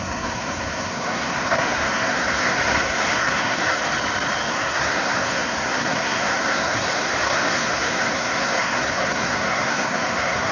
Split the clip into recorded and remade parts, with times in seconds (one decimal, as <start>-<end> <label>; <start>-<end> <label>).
0.0-3.8 remade; 3.8-4.5 recorded; 4.5-10.5 remade

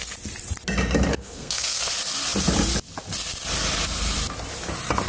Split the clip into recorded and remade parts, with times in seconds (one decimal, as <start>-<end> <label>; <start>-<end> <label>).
0.0-1.1 recorded; 1.1-1.9 remade; 1.9-5.1 recorded